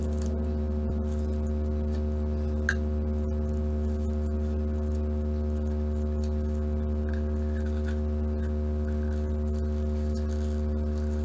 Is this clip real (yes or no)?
yes